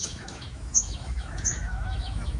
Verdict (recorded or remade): remade